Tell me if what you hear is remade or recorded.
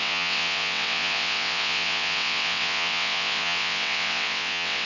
remade